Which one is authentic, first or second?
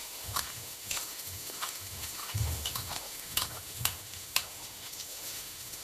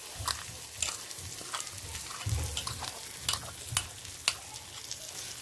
second